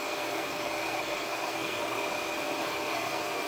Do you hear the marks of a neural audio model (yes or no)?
yes